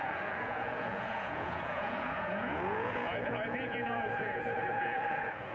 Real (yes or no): no